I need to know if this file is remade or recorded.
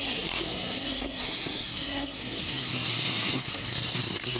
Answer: remade